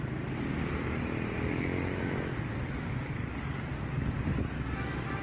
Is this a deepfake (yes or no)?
no